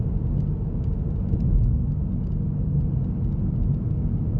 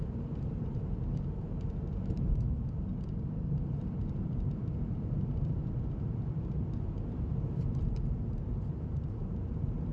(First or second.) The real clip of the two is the first